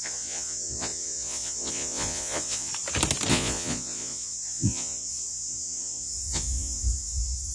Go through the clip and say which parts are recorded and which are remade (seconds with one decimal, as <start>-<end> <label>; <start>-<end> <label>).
0.0-2.7 remade; 2.7-3.3 recorded; 3.3-7.5 remade